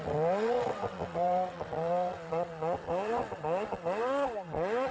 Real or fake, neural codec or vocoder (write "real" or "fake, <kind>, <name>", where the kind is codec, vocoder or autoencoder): fake, vocoder, WaveNeXt